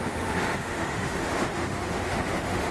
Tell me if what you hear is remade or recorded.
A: remade